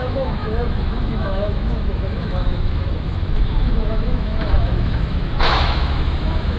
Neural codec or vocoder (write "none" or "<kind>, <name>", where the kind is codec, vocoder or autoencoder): autoencoder, DAC-VAE